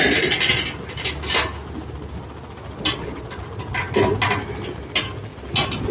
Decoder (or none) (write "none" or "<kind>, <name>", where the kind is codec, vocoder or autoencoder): none